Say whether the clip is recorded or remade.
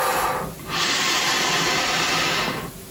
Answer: recorded